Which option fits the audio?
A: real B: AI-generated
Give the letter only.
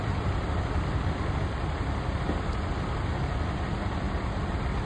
B